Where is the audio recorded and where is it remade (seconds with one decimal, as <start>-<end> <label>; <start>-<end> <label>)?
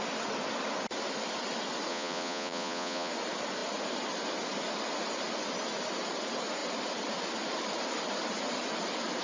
0.0-1.9 recorded; 1.9-3.1 remade; 3.1-9.2 recorded